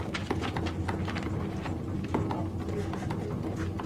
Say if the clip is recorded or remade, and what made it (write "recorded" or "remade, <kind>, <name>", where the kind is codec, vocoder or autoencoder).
recorded